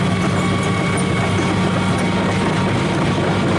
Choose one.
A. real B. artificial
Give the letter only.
A